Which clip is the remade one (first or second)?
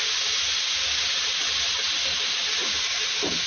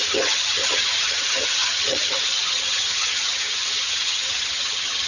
second